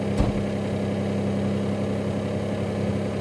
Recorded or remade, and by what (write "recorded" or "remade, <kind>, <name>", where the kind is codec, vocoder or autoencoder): recorded